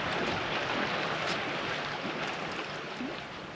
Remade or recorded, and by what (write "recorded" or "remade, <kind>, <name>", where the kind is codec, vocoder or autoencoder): recorded